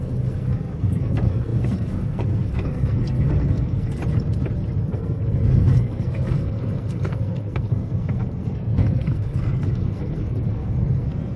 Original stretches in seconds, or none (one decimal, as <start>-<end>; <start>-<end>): 4.0-4.8